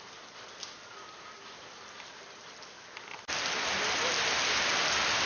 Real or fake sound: real